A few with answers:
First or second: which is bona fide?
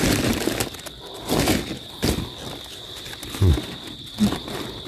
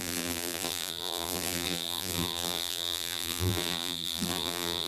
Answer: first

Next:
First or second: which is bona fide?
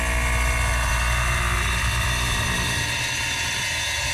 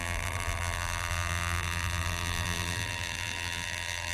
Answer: first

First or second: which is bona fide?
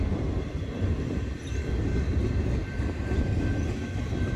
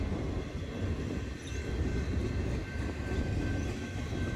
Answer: second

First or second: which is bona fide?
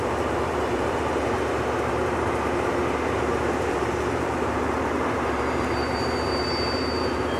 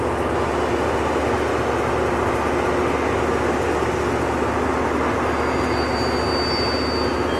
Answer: second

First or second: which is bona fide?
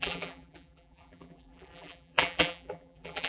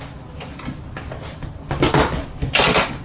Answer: second